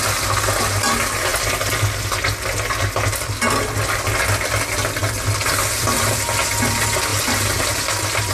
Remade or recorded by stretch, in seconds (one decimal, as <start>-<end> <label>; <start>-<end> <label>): 0.0-8.3 recorded